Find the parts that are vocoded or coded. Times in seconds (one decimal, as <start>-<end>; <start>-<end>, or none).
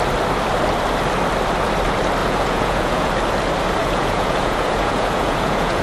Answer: 2.2-3.1; 3.8-5.8